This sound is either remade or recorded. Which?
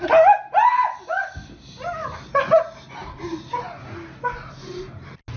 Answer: recorded